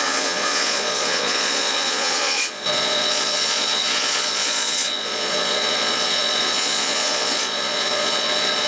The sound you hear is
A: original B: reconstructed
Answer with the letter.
B